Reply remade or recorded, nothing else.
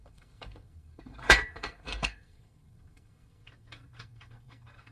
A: remade